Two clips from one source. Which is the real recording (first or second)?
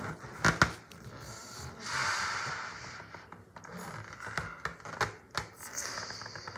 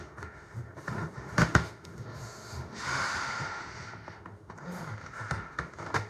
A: first